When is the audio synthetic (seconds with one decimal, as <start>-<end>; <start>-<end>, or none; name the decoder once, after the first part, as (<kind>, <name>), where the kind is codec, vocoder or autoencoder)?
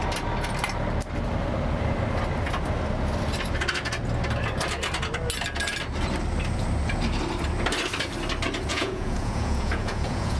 8.7-10.4 (vocoder, Vocos)